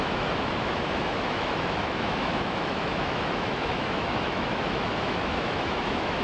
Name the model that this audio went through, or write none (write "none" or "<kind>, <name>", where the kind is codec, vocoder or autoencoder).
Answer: autoencoder, DAC-VAE